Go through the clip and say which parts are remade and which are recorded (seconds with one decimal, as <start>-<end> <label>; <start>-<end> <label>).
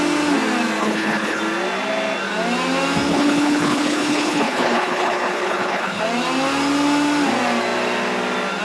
0.0-0.8 recorded; 0.8-1.4 remade; 1.4-3.1 recorded; 3.1-6.0 remade; 6.0-8.6 recorded